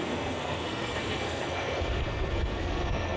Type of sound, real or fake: fake